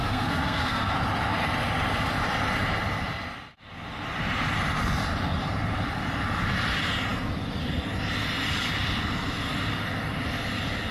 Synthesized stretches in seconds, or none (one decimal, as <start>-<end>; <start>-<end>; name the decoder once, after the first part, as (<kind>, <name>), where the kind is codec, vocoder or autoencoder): 0.0-0.9 (codec, SNAC)